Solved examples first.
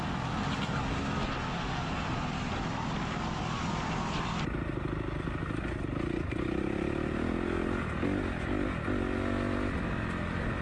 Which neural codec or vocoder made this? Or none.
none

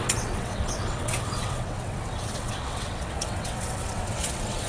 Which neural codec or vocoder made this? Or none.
vocoder, WaveNeXt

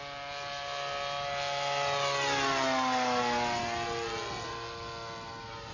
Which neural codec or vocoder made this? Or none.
none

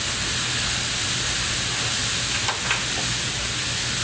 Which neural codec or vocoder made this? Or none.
none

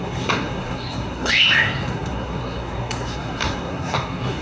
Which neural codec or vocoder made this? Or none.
codec, SNAC